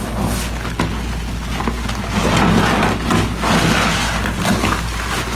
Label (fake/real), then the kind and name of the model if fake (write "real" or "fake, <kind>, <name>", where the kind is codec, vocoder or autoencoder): real